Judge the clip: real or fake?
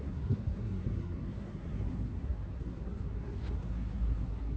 fake